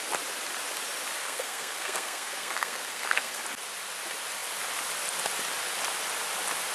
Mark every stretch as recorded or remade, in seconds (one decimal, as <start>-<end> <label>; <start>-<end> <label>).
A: 0.0-1.2 recorded; 1.2-3.4 remade; 3.4-6.7 recorded